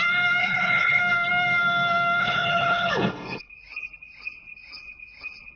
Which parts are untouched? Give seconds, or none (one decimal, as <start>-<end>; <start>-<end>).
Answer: 0.0-0.4; 1.0-2.2; 3.5-5.6

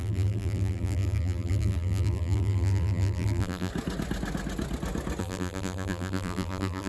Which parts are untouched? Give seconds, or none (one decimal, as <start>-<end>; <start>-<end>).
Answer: 3.7-5.2

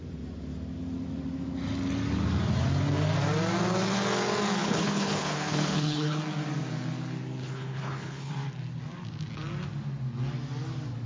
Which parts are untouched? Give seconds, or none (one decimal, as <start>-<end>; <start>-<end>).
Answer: 0.0-4.6; 6.2-7.4; 8.3-11.1